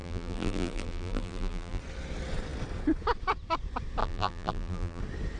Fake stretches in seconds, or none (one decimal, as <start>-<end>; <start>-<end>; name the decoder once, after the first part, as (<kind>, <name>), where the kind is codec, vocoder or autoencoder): 0.0-1.8 (vocoder, BigVGAN v2); 4.0-5.0